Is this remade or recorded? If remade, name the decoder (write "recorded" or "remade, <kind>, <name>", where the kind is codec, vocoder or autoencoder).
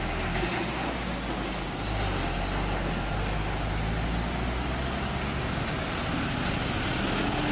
recorded